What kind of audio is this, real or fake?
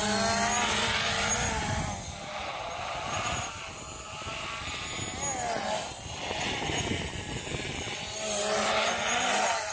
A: real